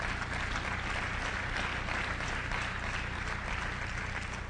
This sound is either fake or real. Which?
real